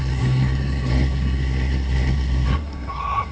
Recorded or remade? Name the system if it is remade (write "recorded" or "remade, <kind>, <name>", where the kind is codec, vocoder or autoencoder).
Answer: remade, codec, SNAC